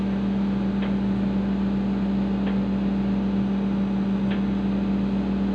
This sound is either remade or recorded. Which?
recorded